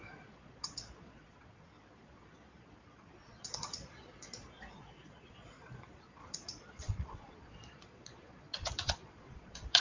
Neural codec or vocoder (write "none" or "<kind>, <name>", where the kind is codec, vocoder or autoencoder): vocoder, Vocos